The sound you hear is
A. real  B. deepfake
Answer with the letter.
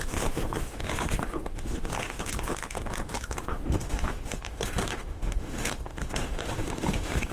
B